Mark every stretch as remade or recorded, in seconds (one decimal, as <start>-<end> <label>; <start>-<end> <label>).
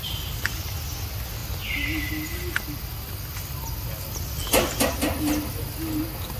0.0-6.4 recorded